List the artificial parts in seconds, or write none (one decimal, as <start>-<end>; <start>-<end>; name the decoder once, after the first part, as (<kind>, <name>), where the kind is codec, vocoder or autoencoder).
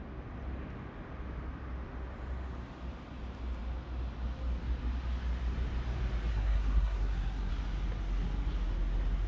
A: 6.3-7.5 (codec, SNAC)